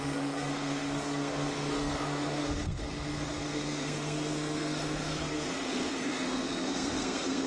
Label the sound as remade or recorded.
remade